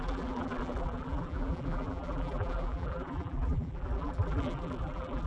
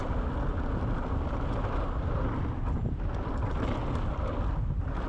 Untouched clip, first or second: second